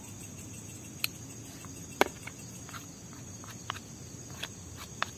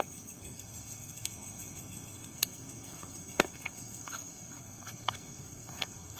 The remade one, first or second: second